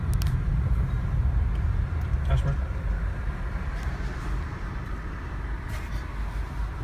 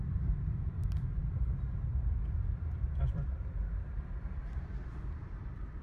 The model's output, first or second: second